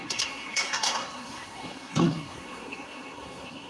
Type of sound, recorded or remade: remade